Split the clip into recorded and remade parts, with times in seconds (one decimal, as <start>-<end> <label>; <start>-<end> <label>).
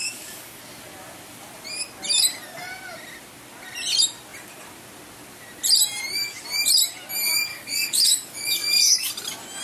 0.0-0.6 remade; 0.6-7.5 recorded; 7.5-9.1 remade; 9.1-9.6 recorded